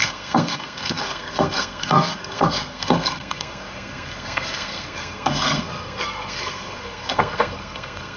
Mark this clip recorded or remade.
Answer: remade